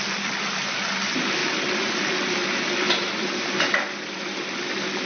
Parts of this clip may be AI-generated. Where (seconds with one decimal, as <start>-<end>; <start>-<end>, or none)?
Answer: 1.4-4.4